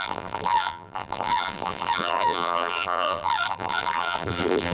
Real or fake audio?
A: fake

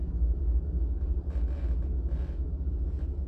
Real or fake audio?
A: real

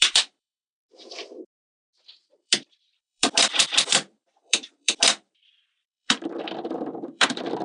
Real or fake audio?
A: fake